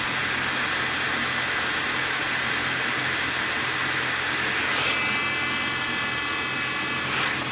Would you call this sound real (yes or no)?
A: yes